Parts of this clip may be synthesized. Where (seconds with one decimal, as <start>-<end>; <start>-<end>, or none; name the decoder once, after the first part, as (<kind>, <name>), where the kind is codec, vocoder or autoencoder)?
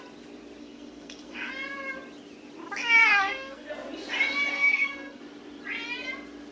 0.6-1.5 (codec, SNAC); 3.0-3.7; 4.5-5.2